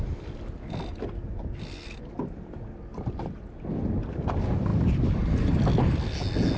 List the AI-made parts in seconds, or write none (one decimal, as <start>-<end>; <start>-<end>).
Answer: none